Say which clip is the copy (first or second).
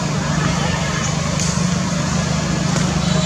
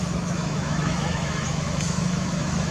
second